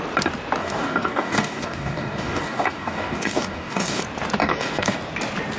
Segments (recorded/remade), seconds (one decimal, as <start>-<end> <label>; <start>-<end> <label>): 0.0-0.6 recorded; 0.6-4.0 remade; 4.0-4.4 recorded; 4.4-5.0 remade; 5.0-5.6 recorded